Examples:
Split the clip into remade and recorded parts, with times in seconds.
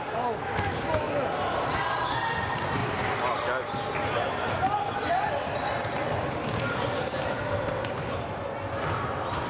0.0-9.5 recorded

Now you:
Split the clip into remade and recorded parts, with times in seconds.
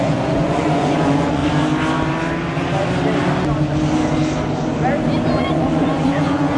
0.0-1.4 remade; 1.4-5.4 recorded; 5.4-6.6 remade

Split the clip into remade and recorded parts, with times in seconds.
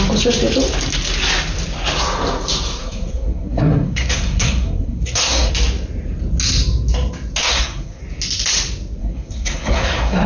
0.0-2.8 recorded; 2.8-5.5 remade; 5.5-7.4 recorded; 7.4-8.0 remade; 8.0-9.0 recorded; 9.0-10.3 remade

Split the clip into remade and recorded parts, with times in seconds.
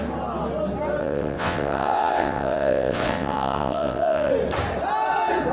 0.0-1.0 recorded; 1.0-4.3 remade; 4.3-5.5 recorded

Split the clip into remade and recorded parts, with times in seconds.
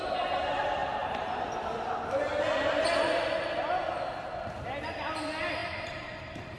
0.0-0.8 recorded; 0.8-1.4 remade; 1.4-5.6 recorded; 5.6-6.6 remade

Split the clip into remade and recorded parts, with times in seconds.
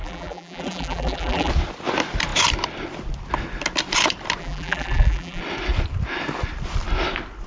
0.0-1.5 remade; 1.5-4.4 recorded; 4.4-5.4 remade; 5.4-7.5 recorded